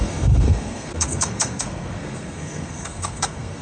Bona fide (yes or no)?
no